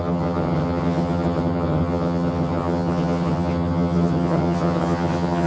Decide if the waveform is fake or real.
fake